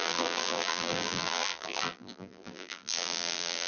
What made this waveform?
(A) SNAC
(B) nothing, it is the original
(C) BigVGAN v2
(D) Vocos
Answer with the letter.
C